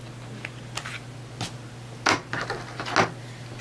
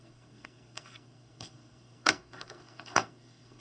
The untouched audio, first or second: first